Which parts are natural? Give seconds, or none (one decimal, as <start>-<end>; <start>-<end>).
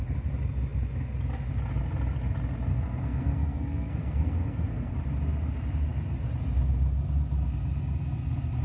0.0-2.7; 4.9-8.6